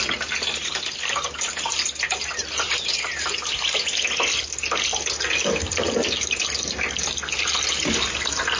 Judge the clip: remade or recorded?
recorded